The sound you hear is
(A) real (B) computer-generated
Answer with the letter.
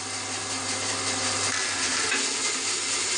A